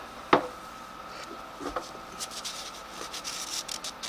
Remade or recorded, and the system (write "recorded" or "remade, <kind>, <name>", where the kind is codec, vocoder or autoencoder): recorded